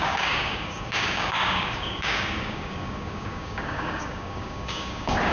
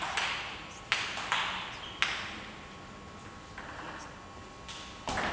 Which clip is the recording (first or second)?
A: second